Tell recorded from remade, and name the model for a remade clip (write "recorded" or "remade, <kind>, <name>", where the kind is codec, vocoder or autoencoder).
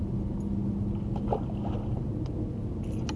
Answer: recorded